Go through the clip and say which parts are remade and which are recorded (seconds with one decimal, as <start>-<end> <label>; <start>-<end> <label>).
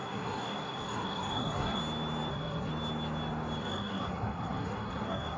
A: 0.0-1.8 remade; 1.8-2.3 recorded; 2.3-2.7 remade; 2.7-3.6 recorded; 3.6-5.4 remade